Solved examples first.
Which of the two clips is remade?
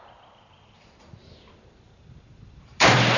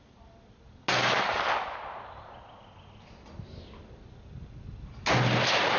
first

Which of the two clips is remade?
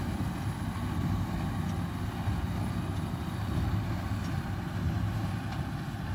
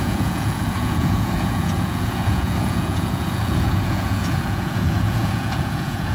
second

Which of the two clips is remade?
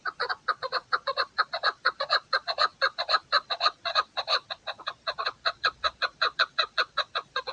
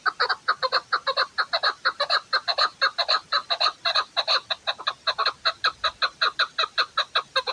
first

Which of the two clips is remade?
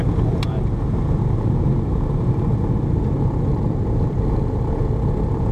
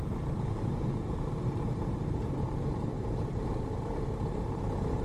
second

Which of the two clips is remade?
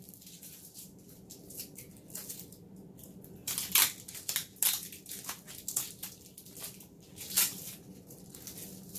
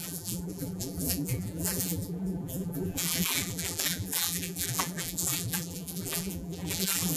second